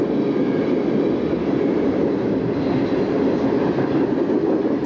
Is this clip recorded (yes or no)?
yes